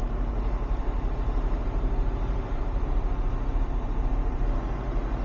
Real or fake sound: fake